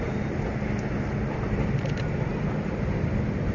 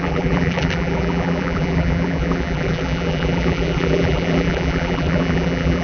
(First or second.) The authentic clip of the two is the first